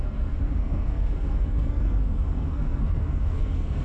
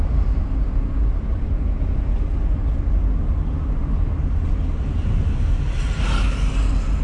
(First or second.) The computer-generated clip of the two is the first